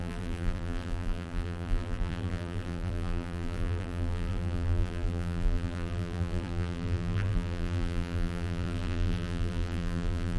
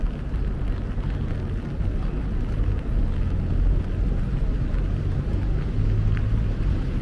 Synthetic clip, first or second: first